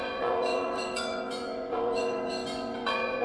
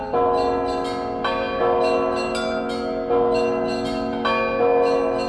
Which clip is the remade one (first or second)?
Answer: first